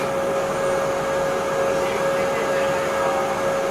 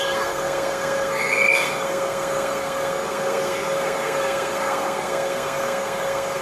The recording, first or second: first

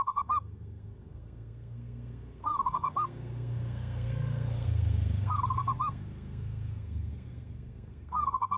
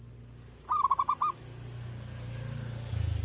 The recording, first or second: second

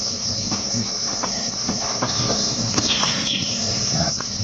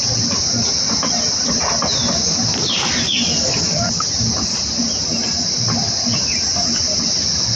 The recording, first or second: second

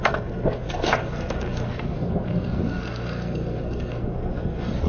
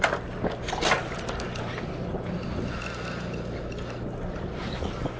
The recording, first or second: second